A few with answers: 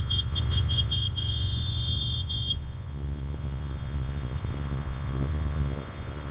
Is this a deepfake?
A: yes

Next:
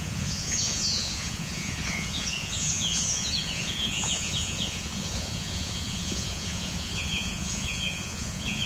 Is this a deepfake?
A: yes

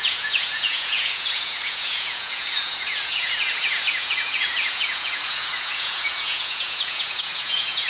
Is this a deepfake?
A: yes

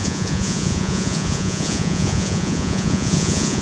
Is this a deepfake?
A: yes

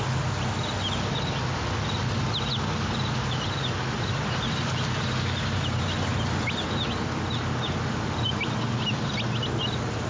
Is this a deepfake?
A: no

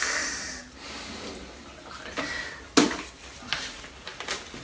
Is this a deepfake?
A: no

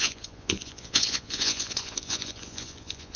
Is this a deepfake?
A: yes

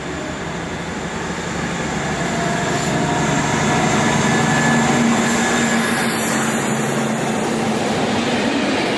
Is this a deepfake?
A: no